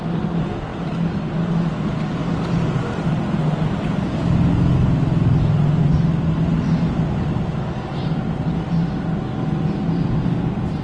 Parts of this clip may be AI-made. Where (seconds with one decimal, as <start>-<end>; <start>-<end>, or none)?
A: none